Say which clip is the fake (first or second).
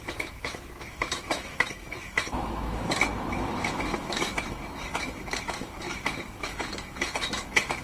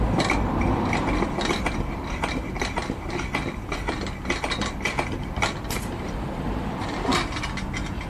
first